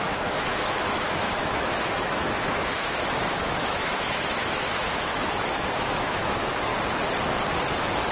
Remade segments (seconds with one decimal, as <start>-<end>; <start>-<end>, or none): 0.0-6.7